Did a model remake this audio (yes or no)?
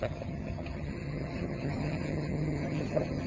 yes